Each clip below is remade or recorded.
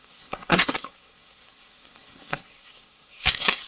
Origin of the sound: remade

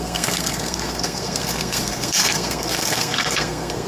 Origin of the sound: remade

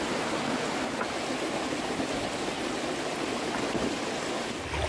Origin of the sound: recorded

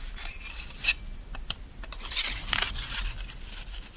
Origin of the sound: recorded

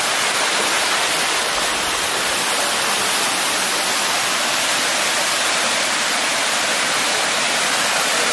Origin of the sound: recorded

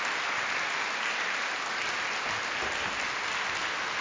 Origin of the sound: recorded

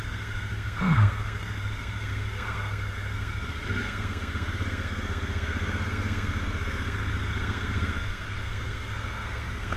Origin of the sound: remade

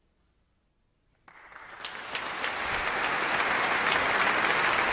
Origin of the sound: recorded